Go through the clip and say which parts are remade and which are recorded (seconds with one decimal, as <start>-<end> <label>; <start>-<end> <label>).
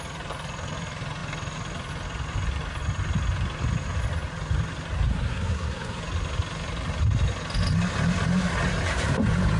0.0-5.1 recorded; 5.1-6.0 remade; 6.0-9.6 recorded